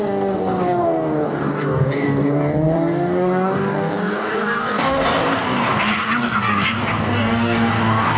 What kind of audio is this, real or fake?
fake